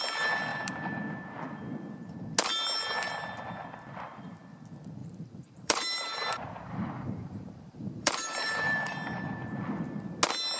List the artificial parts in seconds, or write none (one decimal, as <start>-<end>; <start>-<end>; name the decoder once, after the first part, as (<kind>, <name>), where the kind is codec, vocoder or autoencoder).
5.0-9.6 (vocoder, BigVGAN v2)